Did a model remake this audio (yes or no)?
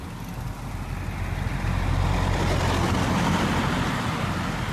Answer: no